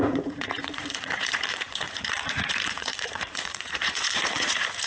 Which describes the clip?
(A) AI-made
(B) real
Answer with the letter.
A